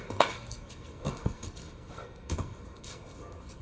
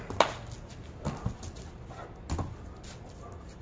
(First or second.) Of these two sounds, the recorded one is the second